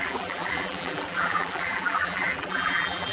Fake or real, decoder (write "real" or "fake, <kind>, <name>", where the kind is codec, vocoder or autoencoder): fake, vocoder, BigVGAN v2